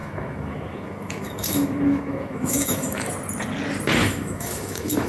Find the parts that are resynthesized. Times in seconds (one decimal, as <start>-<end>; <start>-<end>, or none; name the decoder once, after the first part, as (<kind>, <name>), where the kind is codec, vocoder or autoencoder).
0.0-3.1 (autoencoder, DAC-VAE); 4.0-5.1